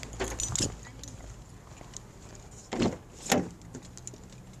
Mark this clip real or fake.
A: real